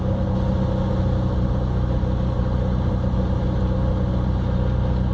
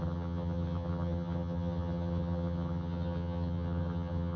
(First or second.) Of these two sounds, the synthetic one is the second